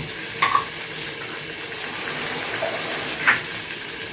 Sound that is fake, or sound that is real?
real